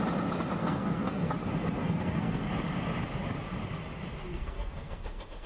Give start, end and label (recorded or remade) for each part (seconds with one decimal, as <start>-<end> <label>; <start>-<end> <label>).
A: 0.0-0.6 recorded; 0.6-1.3 remade; 1.3-1.8 recorded; 1.8-2.4 remade; 2.4-4.3 recorded; 4.3-5.5 remade